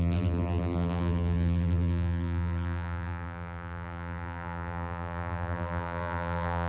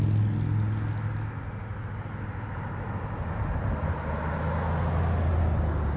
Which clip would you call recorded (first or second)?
second